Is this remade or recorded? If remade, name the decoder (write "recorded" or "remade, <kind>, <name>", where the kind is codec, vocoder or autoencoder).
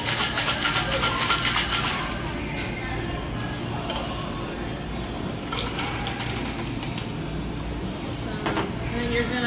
recorded